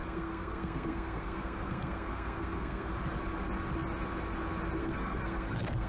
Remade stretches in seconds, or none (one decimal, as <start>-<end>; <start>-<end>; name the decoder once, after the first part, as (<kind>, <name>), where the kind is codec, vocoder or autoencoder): 0.0-2.9 (codec, SNAC); 4.8-5.9